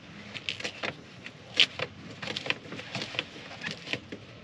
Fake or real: real